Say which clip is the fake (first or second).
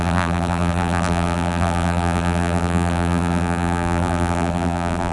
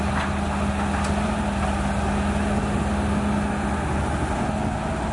first